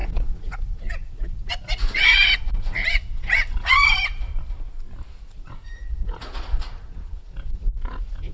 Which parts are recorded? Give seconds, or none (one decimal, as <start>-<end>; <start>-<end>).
4.3-5.1